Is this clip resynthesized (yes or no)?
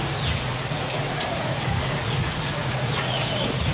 yes